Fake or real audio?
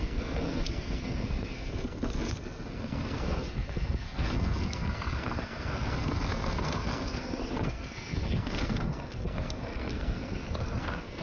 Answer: fake